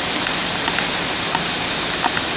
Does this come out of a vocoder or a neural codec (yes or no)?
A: no